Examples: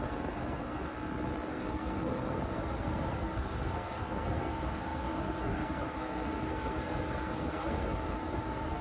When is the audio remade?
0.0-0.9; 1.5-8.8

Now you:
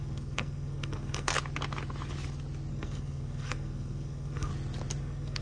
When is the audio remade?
0.0-1.3; 2.7-4.5; 5.0-5.4

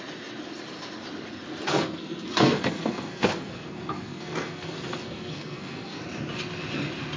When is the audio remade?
1.7-6.0

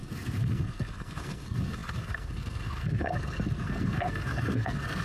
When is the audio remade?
0.0-5.0

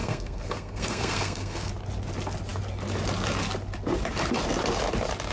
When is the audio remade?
0.0-1.7

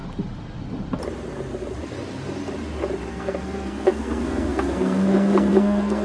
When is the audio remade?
3.1-6.0

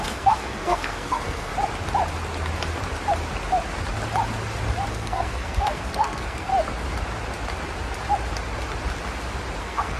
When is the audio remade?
0.0-1.5; 4.9-6.5; 9.6-10.0

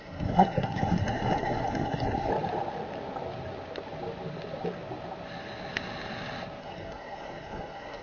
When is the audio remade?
0.0-2.3; 6.6-8.0